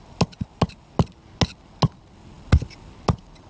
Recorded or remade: recorded